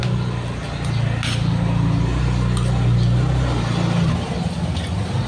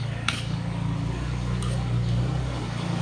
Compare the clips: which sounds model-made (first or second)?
second